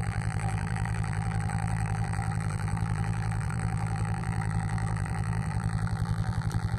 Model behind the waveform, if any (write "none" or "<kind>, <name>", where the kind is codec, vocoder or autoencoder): vocoder, BigVGAN v2